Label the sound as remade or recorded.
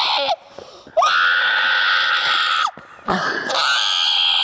recorded